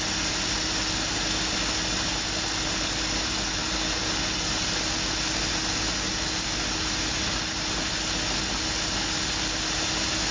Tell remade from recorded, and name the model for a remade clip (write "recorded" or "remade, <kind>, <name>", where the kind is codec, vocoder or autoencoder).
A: recorded